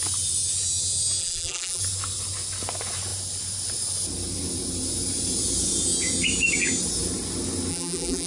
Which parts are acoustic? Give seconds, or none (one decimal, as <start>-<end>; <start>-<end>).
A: 0.0-1.2; 1.8-7.7